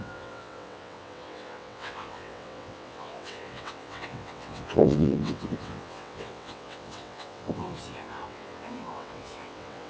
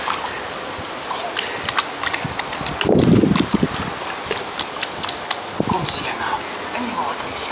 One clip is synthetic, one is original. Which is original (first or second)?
second